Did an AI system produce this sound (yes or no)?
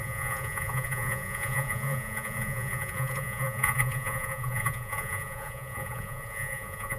yes